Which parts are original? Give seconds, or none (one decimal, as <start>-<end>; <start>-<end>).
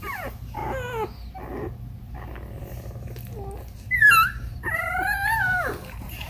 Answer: 0.6-4.4